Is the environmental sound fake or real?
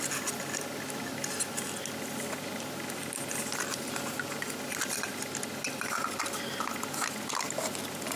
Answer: real